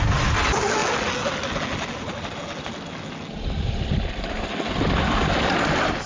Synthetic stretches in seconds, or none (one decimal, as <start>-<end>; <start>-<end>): none